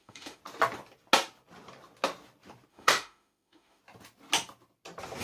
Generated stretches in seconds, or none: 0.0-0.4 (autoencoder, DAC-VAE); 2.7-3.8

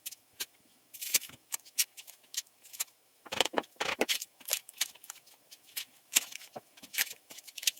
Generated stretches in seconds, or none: 0.0-7.8 (autoencoder, DAC-VAE)